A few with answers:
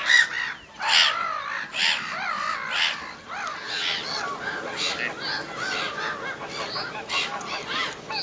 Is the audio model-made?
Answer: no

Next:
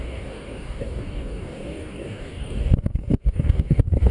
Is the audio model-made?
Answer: yes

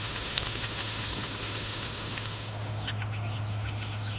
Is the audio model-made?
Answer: yes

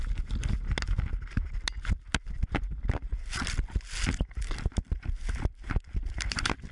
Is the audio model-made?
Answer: no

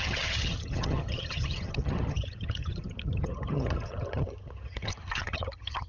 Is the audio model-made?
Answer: yes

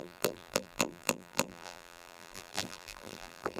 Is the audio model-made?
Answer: yes